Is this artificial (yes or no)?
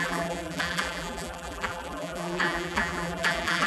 yes